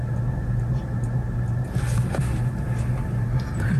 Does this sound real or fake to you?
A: real